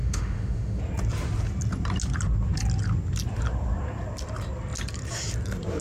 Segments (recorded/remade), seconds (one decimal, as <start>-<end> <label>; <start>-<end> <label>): 0.0-0.8 remade; 0.8-5.8 recorded